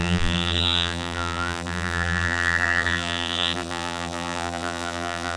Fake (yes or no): yes